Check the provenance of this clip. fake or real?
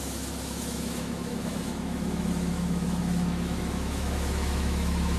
fake